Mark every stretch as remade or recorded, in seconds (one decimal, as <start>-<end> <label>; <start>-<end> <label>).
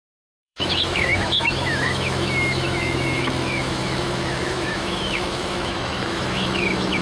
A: 0.0-7.0 remade